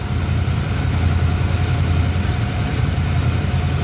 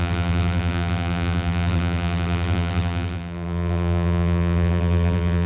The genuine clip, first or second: first